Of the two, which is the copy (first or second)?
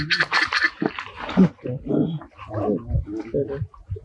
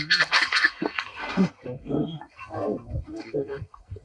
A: second